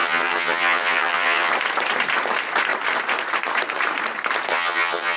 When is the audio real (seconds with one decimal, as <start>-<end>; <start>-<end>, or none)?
1.5-4.5